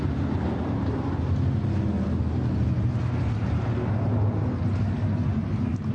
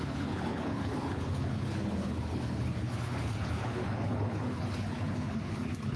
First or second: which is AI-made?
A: second